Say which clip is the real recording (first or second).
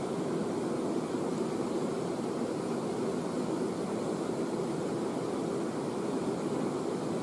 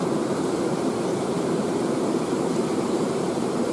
first